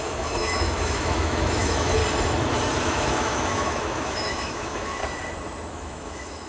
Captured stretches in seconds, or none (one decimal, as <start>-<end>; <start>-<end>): 2.0-2.8; 5.0-5.7